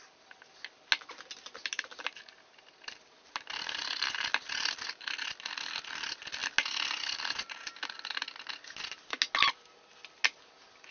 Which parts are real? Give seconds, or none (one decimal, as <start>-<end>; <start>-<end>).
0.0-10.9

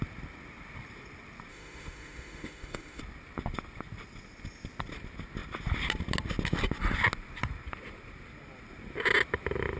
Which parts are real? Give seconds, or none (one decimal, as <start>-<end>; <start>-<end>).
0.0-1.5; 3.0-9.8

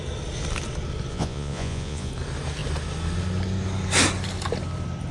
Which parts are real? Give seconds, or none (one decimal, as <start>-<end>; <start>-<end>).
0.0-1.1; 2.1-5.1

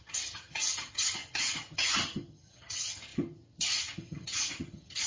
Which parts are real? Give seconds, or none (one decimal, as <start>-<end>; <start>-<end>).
none

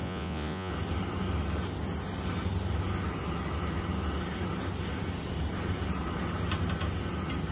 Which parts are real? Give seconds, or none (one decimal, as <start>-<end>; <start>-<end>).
0.7-7.5

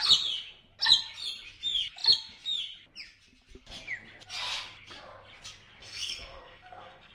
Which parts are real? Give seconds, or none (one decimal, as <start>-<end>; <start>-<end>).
0.0-5.8